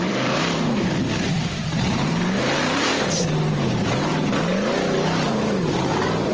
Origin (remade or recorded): remade